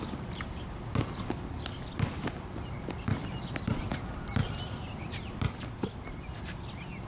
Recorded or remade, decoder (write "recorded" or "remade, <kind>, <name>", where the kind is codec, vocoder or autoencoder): recorded